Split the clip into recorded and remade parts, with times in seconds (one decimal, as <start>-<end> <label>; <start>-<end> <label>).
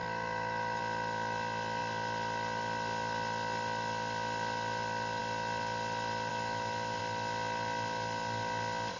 0.0-0.8 remade; 0.8-6.3 recorded; 6.3-7.0 remade; 7.0-9.0 recorded